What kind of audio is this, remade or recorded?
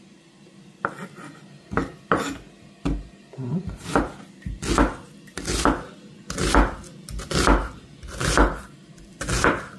recorded